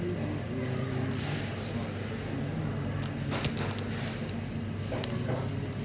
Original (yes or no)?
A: yes